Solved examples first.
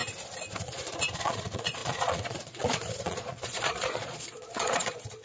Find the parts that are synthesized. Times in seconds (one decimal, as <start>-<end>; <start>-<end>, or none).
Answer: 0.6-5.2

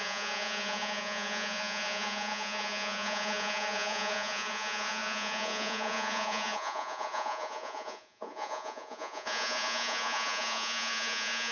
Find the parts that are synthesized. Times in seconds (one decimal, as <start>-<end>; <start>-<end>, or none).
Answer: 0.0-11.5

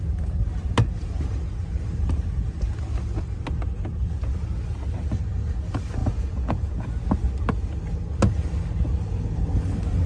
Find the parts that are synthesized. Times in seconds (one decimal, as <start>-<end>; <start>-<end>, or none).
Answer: 6.0-6.9

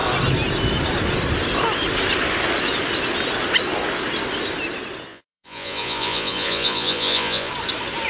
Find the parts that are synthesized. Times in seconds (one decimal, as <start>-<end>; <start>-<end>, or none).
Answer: 5.1-7.5

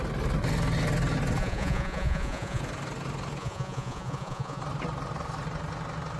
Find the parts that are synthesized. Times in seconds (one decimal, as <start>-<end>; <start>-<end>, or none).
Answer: 1.4-2.6; 3.4-4.6

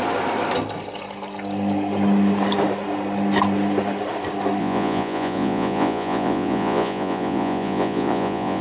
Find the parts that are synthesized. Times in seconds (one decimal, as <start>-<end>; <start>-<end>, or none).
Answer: 4.6-8.6